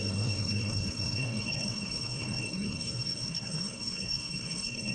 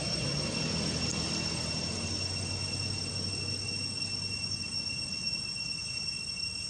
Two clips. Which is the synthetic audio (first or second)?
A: first